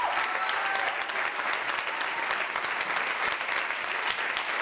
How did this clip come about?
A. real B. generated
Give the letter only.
A